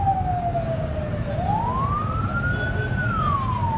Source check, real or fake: real